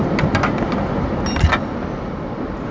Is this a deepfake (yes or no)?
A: no